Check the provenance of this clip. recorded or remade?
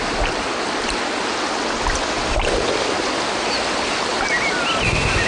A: recorded